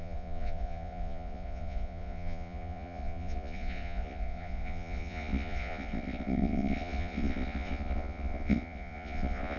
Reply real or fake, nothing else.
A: fake